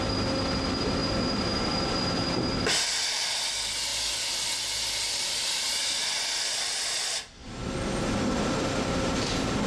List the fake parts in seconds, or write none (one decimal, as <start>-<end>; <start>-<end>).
none